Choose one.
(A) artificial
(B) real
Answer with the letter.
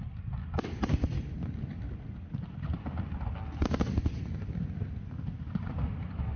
B